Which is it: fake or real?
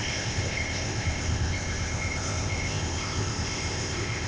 fake